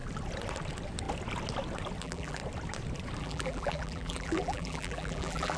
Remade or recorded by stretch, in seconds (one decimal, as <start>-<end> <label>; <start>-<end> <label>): 0.0-2.0 recorded; 2.0-2.4 remade; 2.4-3.2 recorded; 3.2-5.6 remade